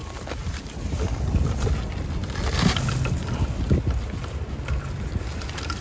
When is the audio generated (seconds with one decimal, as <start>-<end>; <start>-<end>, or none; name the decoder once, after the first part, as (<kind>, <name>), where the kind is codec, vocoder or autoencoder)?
none